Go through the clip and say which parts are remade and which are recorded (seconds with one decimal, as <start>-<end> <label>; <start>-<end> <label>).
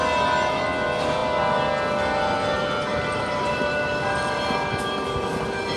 0.0-2.9 recorded; 2.9-5.8 remade